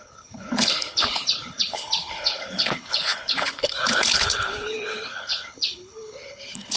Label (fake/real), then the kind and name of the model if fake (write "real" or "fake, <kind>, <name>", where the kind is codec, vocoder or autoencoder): fake, codec, HILCodec